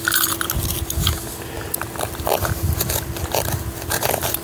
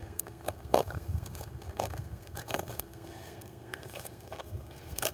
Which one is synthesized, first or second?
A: second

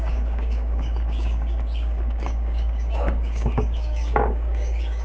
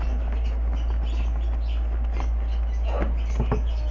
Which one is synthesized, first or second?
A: first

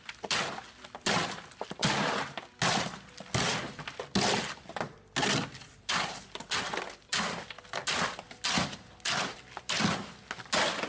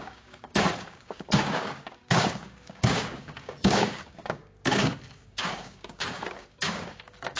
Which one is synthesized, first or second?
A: second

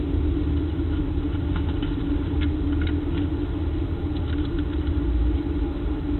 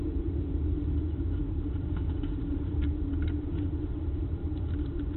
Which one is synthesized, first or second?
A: second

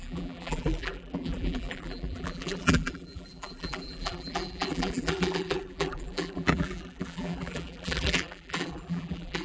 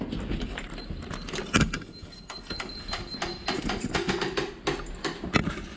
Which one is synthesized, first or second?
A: first